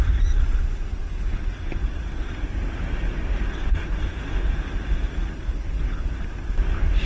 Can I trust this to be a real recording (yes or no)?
yes